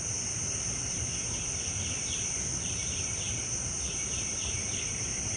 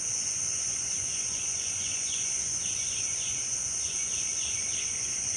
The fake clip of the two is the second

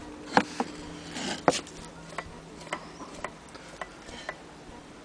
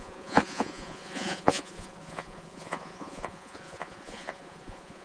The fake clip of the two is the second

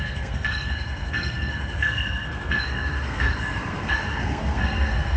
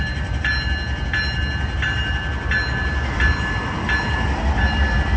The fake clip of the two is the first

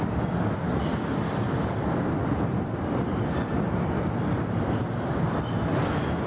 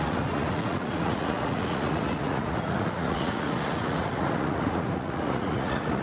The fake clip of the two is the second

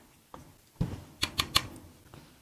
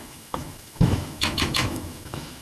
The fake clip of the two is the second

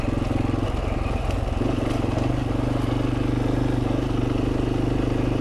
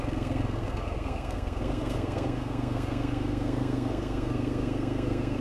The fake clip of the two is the second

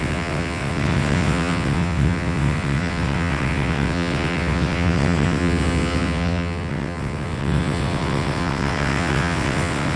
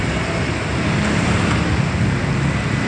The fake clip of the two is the first